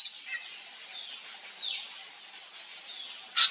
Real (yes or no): yes